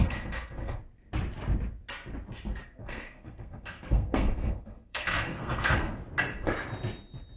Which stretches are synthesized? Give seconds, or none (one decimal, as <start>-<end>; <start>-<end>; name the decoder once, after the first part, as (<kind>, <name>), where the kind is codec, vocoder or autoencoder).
0.0-0.8 (codec, SNAC); 2.8-6.0